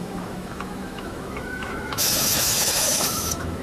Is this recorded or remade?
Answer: remade